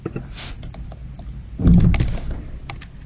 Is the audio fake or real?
real